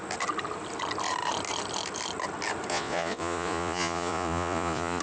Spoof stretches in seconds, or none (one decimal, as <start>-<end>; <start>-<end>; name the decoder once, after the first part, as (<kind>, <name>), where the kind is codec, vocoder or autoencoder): 2.7-5.0 (vocoder, Vocos)